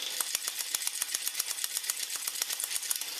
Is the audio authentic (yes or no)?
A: yes